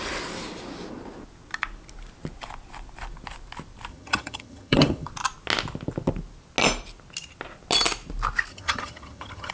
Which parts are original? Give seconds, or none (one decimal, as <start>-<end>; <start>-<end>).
0.0-3.9; 5.1-8.5